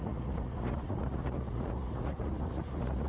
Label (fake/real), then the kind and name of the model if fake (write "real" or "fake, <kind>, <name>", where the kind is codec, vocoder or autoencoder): fake, vocoder, Vocos